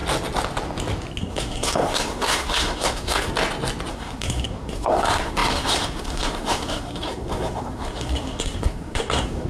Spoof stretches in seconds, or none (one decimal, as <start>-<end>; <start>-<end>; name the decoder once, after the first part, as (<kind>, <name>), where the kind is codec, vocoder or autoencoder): 1.2-3.3 (codec, SNAC); 3.9-9.5